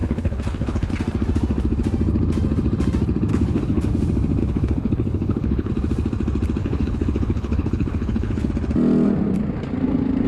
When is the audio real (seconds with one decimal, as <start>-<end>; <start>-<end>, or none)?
0.9-3.3; 3.9-4.4; 5.7-6.6; 8.5-10.3